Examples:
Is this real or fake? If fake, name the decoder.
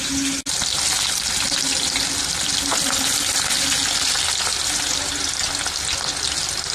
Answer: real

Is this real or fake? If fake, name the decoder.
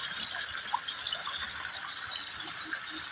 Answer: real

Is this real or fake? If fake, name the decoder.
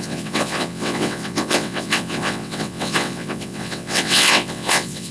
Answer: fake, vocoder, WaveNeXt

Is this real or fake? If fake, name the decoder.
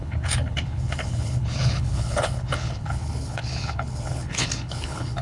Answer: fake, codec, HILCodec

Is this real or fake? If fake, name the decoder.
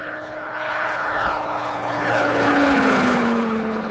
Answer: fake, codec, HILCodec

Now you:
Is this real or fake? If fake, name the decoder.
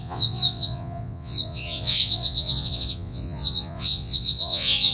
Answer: fake, vocoder, Vocos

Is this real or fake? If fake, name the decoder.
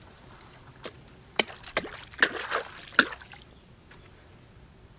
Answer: real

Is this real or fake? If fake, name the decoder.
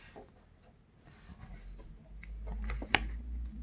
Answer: real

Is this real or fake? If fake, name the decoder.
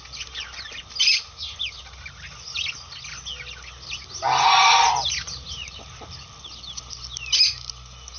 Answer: real